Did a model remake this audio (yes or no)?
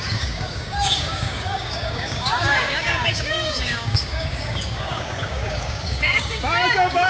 yes